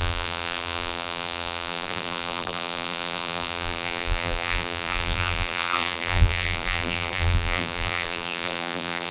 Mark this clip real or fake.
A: fake